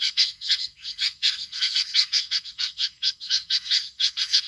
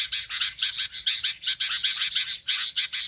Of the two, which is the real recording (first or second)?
second